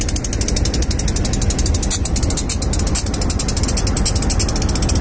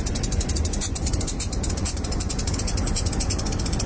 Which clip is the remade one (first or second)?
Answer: second